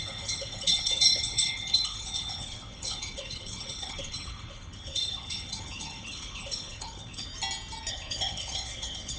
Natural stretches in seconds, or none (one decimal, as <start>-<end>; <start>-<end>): 7.3-7.9

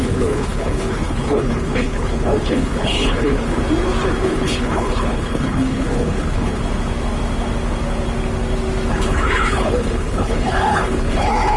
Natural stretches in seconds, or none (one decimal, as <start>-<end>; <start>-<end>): 3.6-4.2; 6.6-8.9

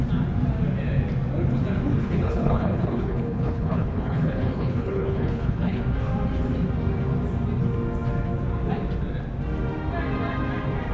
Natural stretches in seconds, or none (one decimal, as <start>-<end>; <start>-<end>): 0.0-2.0; 5.8-10.9

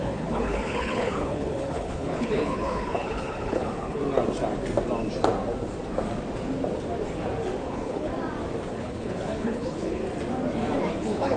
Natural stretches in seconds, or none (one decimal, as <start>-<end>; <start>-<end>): 4.0-7.6; 8.1-8.7; 10.0-10.9

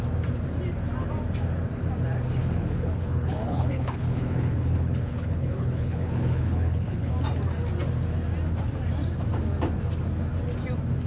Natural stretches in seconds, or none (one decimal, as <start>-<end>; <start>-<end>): 0.0-2.4; 7.1-11.1